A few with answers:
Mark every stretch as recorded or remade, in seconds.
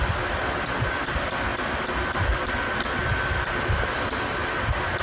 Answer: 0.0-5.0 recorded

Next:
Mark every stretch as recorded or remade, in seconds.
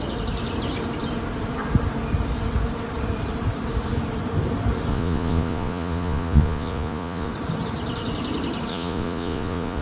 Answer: 0.0-4.9 recorded; 4.9-7.3 remade; 7.3-8.7 recorded; 8.7-9.8 remade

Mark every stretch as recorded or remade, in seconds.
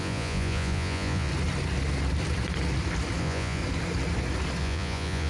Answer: 0.0-1.3 remade; 1.3-3.2 recorded; 3.2-3.6 remade; 3.6-4.6 recorded; 4.6-5.3 remade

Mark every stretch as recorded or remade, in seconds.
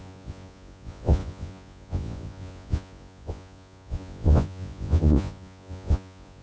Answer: 0.0-6.4 remade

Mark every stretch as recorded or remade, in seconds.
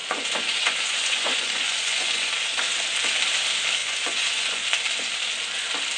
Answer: 0.0-2.3 remade; 2.3-3.8 recorded; 3.8-4.6 remade; 4.6-6.0 recorded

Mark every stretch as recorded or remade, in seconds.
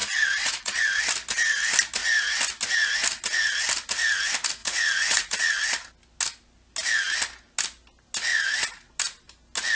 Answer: 0.0-0.8 remade; 0.8-4.6 recorded; 4.6-5.5 remade; 5.5-8.3 recorded; 8.3-8.9 remade; 8.9-9.7 recorded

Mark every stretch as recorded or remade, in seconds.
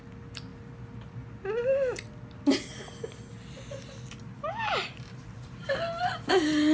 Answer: 0.0-6.7 recorded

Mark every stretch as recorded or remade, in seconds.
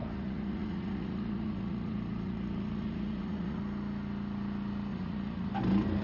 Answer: 0.0-3.6 remade; 3.6-4.9 recorded; 4.9-5.5 remade; 5.5-6.0 recorded